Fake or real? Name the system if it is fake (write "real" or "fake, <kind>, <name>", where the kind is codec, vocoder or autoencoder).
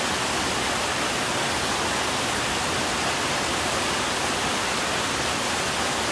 real